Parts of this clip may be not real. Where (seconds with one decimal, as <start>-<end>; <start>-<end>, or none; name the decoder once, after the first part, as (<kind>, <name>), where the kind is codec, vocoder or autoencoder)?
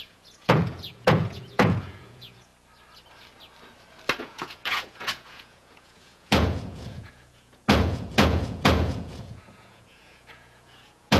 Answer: 0.0-2.5 (vocoder, Vocos); 4.2-11.2